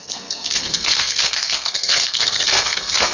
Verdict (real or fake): fake